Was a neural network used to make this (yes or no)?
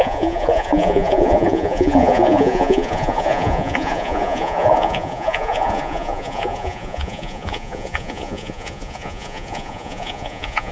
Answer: yes